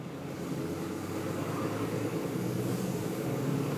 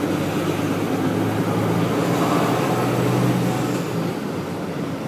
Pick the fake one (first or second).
first